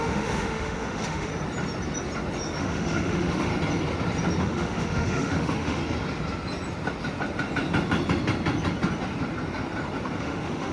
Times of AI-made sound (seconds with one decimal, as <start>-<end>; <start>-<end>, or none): 0.0-1.3; 2.6-3.5; 4.4-5.8; 10.2-10.7